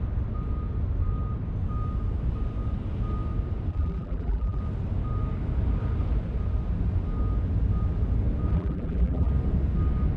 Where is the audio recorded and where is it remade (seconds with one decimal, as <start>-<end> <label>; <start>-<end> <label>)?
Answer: 0.0-3.7 recorded; 3.7-4.6 remade; 4.6-8.5 recorded; 8.5-9.3 remade; 9.3-10.2 recorded